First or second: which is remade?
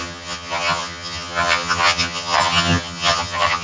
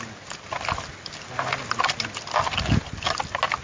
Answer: first